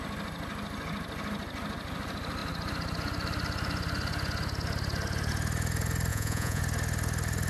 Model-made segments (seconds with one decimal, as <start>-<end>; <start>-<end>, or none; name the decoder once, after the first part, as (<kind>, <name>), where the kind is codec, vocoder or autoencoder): 6.1-6.6 (vocoder, Vocos)